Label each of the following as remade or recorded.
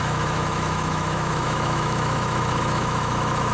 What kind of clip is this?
remade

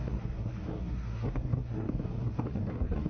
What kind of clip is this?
remade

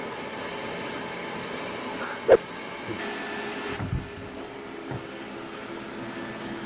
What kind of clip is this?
recorded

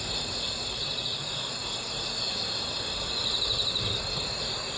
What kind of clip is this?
recorded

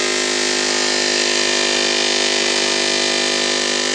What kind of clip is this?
recorded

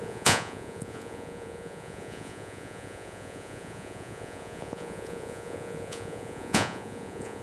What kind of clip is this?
remade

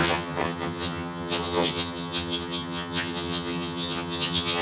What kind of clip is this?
remade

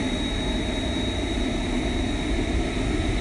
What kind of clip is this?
recorded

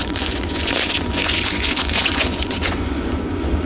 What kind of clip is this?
remade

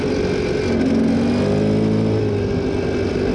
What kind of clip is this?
recorded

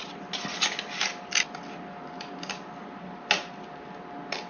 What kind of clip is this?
recorded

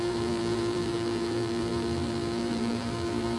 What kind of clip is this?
remade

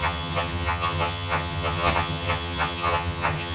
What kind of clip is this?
remade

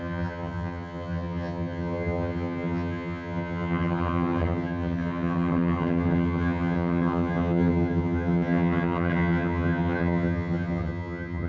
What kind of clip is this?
remade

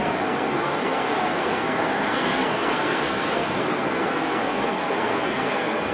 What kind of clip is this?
remade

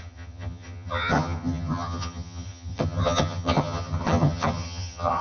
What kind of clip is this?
remade